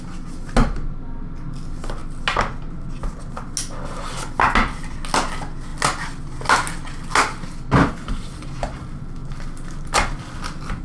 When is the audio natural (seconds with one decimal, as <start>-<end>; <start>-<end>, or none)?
0.0-10.8